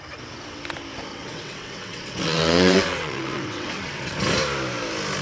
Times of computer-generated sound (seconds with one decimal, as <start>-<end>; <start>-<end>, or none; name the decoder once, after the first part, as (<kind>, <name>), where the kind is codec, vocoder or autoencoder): 1.1-4.2 (vocoder, WaveNeXt)